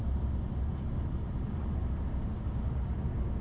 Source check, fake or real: real